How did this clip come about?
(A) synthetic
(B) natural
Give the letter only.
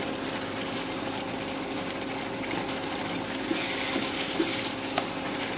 B